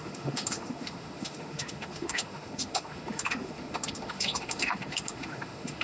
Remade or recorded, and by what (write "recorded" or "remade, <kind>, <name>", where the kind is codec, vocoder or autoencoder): remade, autoencoder, DAC-VAE